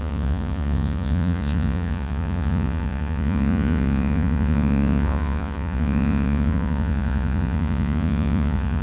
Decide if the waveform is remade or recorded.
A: remade